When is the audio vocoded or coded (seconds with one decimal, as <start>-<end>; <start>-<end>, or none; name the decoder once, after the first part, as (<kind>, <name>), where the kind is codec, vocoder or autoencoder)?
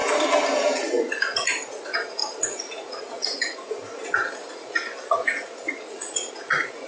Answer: 1.0-6.9 (vocoder, Vocos)